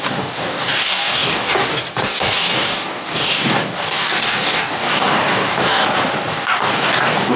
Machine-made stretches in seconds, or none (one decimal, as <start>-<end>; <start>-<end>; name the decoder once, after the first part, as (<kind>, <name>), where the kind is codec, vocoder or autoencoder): 0.0-5.8 (codec, DAC); 6.3-7.4